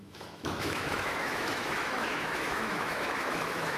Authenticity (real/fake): fake